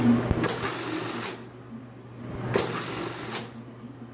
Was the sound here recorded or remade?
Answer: recorded